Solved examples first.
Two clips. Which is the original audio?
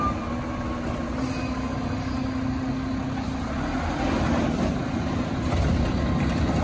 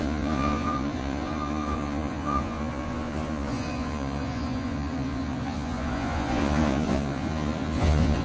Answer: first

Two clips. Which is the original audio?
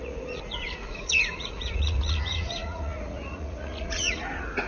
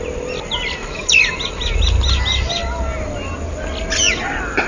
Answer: second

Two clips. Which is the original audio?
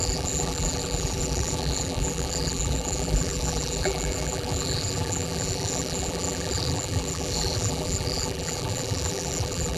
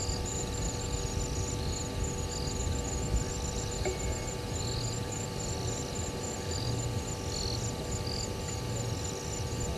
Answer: second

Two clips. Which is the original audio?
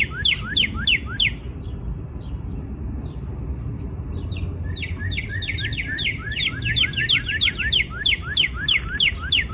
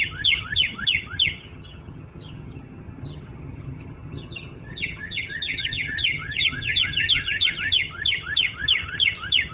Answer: first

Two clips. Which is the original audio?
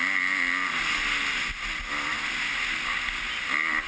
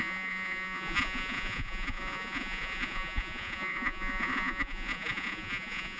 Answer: first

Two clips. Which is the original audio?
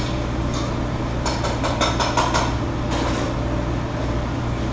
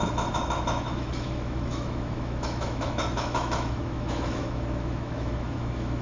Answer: first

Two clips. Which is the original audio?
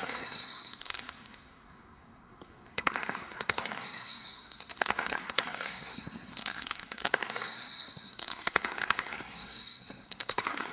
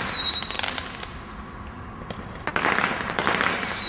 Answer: second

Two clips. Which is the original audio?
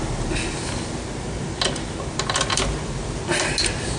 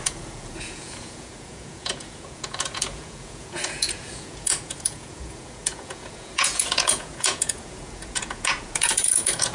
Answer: first